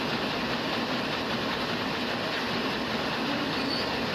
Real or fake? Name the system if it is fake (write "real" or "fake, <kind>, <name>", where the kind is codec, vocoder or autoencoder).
real